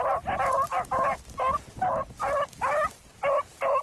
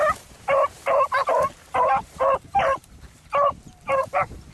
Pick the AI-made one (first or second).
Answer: second